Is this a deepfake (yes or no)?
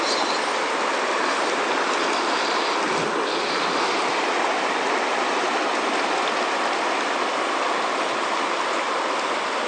yes